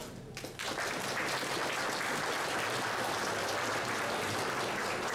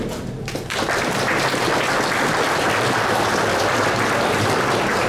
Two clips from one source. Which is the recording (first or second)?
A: first